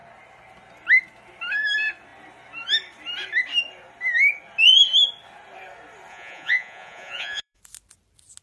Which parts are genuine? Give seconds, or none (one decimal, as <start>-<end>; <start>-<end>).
0.0-6.1; 7.6-8.4